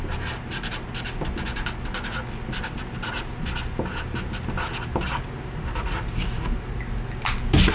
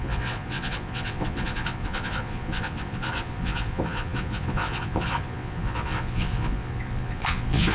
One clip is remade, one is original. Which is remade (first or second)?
second